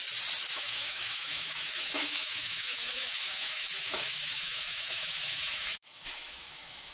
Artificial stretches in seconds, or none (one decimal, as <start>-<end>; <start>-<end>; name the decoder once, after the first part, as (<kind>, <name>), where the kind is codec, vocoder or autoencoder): 0.5-6.9 (autoencoder, DAC-VAE)